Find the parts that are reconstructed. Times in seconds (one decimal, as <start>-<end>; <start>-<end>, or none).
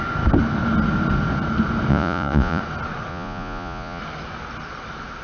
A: 1.9-2.6; 3.1-4.0